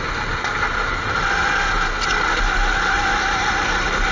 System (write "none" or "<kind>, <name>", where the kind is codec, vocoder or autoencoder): none